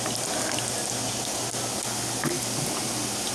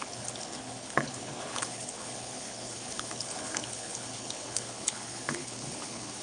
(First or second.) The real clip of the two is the first